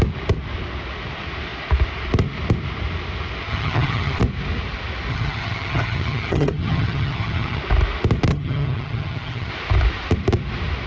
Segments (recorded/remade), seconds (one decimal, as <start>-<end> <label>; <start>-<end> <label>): 0.0-3.5 recorded; 3.5-4.2 remade; 4.2-5.1 recorded; 5.1-7.6 remade; 7.6-8.3 recorded; 8.3-9.5 remade; 9.5-10.9 recorded